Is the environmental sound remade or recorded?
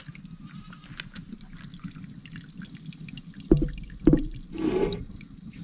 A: recorded